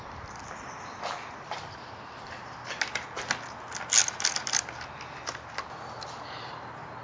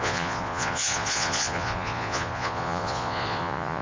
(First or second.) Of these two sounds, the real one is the first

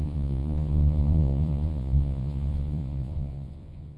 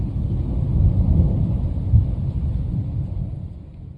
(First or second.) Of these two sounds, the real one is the second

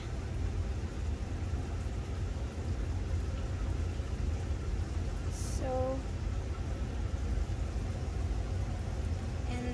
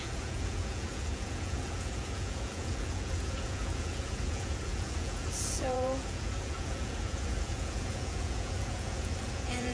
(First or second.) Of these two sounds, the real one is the first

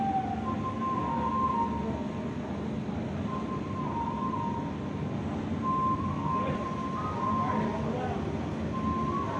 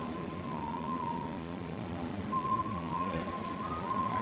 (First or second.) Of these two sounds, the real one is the first